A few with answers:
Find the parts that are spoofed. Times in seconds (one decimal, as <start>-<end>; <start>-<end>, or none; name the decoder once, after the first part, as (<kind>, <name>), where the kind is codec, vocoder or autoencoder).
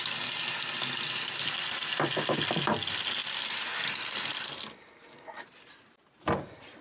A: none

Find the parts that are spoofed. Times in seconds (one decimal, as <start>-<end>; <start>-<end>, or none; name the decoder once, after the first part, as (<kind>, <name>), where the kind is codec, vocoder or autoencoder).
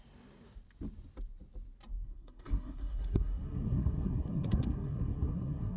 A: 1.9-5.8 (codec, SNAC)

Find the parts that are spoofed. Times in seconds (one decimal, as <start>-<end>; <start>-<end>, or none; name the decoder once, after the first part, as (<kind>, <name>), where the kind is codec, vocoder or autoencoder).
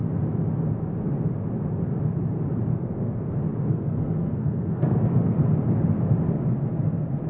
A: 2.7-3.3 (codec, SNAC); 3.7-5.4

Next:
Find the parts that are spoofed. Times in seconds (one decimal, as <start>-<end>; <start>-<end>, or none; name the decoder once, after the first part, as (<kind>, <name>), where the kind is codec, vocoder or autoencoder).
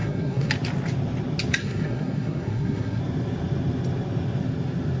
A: 0.0-0.5 (codec, SNAC); 1.6-3.0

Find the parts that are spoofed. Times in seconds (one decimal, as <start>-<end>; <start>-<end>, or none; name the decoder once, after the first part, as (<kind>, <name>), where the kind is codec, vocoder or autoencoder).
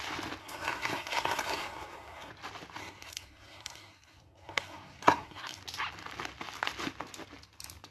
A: 0.4-2.3 (codec, SNAC); 2.8-5.6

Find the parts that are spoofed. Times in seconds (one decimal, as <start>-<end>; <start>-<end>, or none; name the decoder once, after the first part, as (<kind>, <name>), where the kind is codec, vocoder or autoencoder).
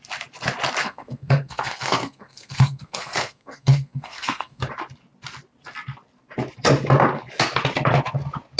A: 0.8-4.6 (codec, SNAC)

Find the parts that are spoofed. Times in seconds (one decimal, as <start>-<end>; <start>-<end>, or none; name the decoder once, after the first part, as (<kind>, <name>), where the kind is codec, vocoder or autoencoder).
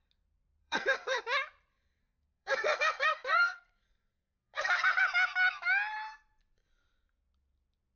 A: 0.6-1.2 (codec, SNAC); 2.0-5.0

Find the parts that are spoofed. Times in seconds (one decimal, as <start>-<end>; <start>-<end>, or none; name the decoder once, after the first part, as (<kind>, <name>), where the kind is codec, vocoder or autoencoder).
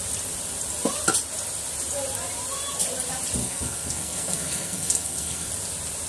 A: 3.4-5.5 (codec, SNAC)